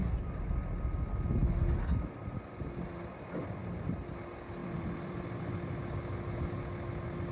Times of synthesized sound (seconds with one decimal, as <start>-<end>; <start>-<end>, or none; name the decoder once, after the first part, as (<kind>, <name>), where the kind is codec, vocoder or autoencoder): 0.0-0.5 (vocoder, BigVGAN v2); 4.6-5.4